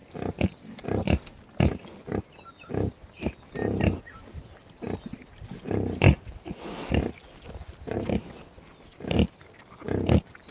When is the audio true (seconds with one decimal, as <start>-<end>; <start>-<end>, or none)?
0.0-10.5

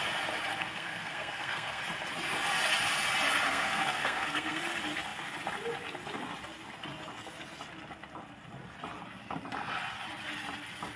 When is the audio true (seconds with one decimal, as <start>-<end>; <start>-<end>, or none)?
0.0-0.6; 1.8-3.5; 4.6-11.0

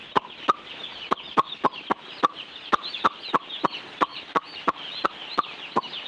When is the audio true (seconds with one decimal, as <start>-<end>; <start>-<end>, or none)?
0.0-4.1; 5.1-6.1

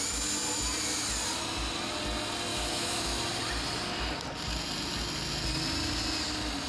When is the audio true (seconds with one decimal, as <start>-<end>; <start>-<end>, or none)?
0.0-2.5; 3.2-6.7

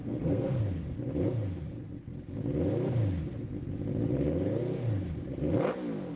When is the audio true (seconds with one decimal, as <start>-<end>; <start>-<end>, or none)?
0.6-6.2